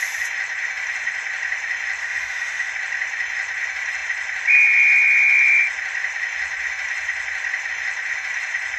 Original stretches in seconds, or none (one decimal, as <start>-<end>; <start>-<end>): 0.0-2.0; 2.7-8.8